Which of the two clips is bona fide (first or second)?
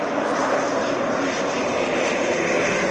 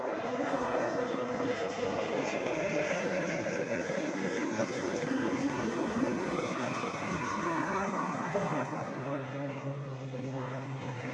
first